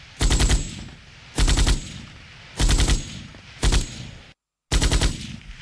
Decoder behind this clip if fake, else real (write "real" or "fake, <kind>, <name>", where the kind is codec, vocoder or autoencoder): real